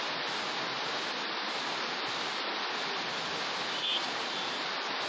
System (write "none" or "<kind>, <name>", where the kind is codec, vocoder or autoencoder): none